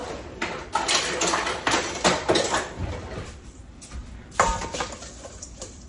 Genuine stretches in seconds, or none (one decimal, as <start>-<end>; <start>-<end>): 1.2-2.8

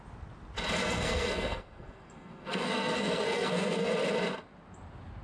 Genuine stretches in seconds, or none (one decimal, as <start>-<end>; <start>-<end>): 0.0-0.8; 3.9-5.2